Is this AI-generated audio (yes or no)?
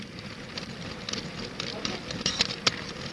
yes